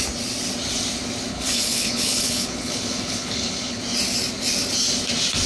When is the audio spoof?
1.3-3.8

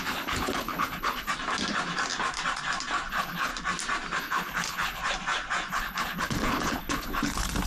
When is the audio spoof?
0.0-1.3; 3.1-3.5; 4.2-5.0; 5.7-7.7

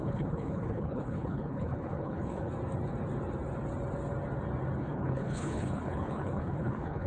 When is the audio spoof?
0.0-2.5; 4.8-7.1

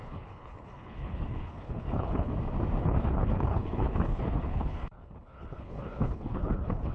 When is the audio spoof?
0.0-2.3; 2.8-6.9

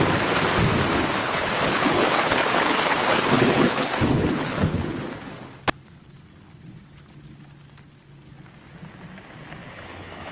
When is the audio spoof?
1.2-5.4; 9.6-10.3